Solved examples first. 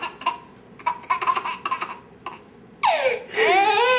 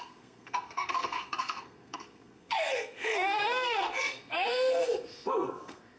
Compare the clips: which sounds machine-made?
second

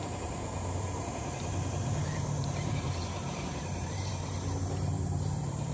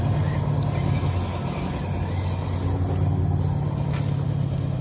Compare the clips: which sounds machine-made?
first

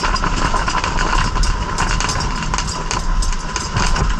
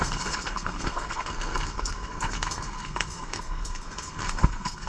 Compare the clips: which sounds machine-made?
second